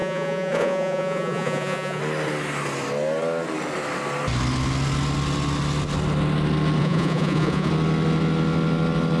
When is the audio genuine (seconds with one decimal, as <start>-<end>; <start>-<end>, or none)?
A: 2.0-6.8; 7.7-9.2

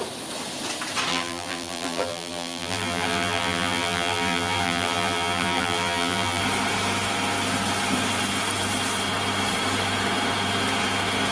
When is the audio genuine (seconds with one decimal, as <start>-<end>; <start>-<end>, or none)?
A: 0.0-1.1; 6.4-11.3

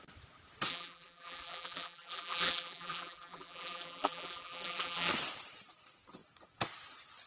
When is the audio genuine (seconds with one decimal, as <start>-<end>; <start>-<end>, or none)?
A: 0.0-0.7; 5.1-7.3

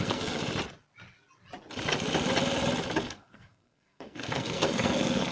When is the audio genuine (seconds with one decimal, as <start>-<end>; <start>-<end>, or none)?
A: 0.4-3.1